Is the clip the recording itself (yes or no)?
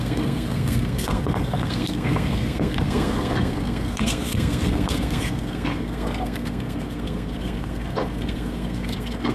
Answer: no